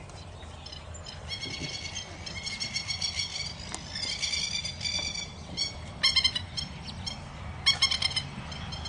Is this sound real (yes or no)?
yes